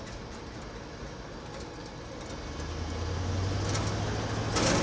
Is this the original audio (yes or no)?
yes